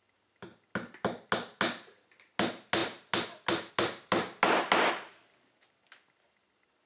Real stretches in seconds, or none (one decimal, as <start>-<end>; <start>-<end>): 0.0-6.9